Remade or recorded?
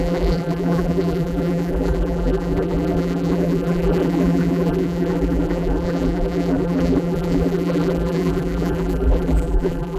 remade